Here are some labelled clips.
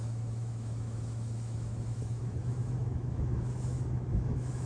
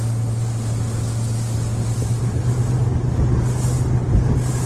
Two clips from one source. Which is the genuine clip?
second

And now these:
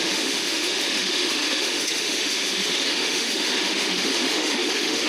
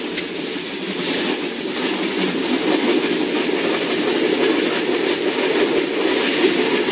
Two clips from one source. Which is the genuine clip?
second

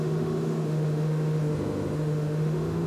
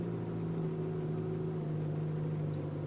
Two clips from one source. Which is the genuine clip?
second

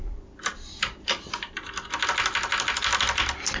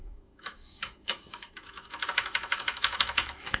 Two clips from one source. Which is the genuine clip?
first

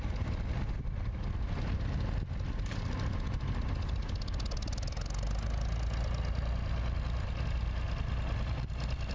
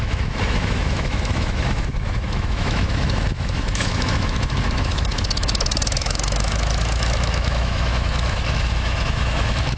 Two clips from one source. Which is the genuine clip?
first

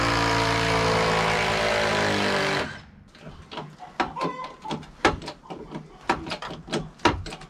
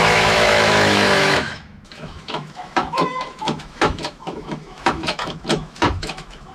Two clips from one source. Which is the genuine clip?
first